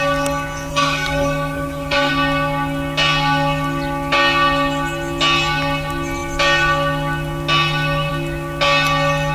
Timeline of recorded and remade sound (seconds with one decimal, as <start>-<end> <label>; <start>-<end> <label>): 0.0-0.7 recorded; 0.7-2.1 remade; 2.1-9.3 recorded